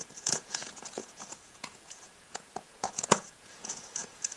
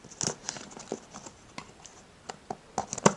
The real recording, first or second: second